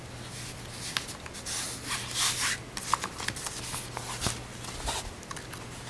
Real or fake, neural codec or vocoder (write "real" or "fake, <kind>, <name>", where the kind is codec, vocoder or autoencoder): real